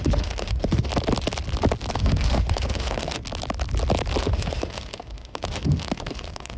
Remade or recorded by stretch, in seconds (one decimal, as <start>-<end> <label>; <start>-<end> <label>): 0.0-0.9 remade; 0.9-1.9 recorded; 1.9-3.2 remade; 3.2-4.2 recorded; 4.2-6.6 remade